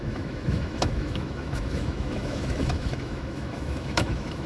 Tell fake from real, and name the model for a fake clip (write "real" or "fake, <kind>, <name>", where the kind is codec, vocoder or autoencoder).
fake, autoencoder, DAC-VAE